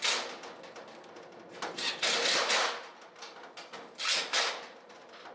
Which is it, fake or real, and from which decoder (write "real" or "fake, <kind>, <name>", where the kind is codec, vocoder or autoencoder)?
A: real